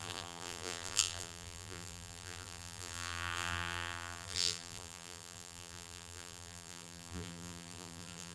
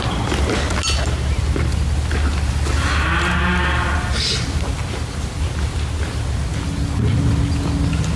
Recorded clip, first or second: second